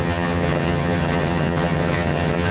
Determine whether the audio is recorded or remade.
remade